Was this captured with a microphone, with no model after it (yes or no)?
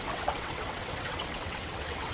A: no